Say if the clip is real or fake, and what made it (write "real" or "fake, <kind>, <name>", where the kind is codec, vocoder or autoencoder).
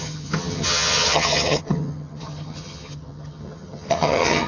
fake, vocoder, HiFi-GAN